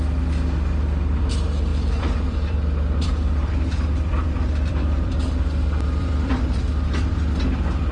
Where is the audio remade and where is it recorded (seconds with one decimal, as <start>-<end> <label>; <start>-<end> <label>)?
0.0-1.7 recorded; 1.7-6.4 remade; 6.4-7.9 recorded

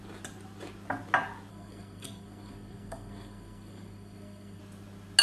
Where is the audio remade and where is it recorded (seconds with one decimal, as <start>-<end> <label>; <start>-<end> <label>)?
0.0-1.5 recorded; 1.5-4.6 remade; 4.6-5.2 recorded

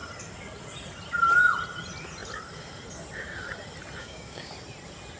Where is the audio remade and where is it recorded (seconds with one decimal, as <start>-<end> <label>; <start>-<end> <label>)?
0.0-4.0 recorded; 4.0-4.5 remade; 4.5-5.2 recorded